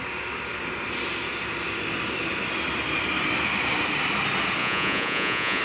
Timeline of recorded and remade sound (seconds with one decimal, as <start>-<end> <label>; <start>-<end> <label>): 0.0-4.6 recorded; 4.6-5.6 remade